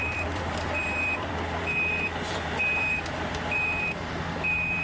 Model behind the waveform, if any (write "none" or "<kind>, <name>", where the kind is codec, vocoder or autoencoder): vocoder, BigVGAN v2